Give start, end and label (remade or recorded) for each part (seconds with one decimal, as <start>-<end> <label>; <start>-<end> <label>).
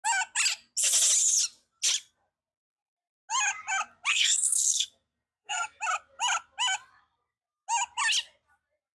0.0-4.1 recorded; 4.1-5.8 remade; 5.8-8.9 recorded